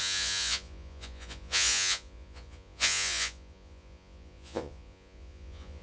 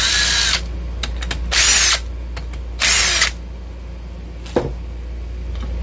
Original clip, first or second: second